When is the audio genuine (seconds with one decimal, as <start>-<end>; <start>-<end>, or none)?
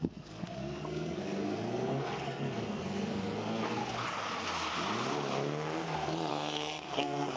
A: 3.8-6.3